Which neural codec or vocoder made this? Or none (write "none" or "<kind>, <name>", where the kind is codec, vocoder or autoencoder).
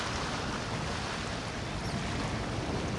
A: none